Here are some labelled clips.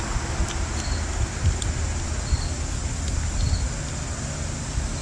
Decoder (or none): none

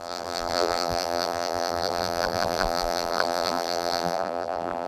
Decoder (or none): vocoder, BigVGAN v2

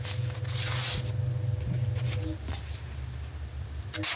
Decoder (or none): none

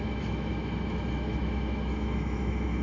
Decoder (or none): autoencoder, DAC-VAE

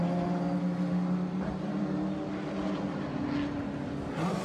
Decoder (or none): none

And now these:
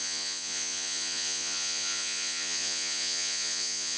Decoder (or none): vocoder, Vocos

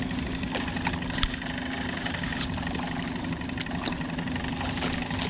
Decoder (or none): none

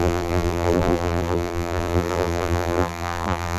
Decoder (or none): vocoder, BigVGAN v2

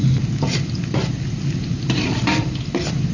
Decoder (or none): none